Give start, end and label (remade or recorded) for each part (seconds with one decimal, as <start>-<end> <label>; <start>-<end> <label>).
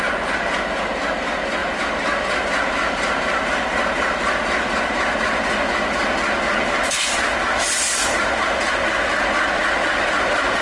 0.0-10.6 recorded